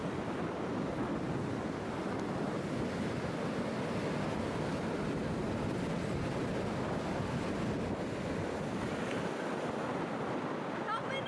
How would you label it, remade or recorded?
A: recorded